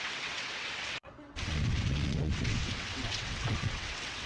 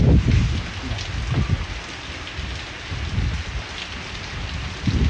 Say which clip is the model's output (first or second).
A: first